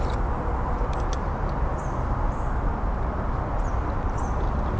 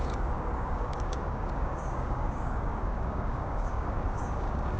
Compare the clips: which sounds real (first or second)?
first